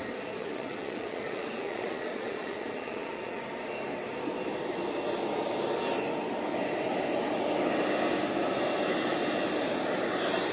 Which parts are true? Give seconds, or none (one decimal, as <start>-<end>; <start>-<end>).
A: 0.0-0.4; 3.4-10.5

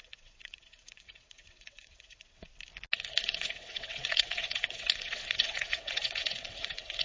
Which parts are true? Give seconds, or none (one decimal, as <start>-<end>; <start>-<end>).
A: 2.5-3.2

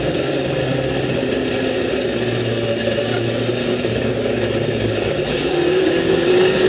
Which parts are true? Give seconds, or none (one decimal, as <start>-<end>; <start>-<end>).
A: 0.6-3.7